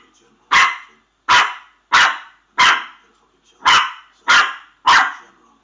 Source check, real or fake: real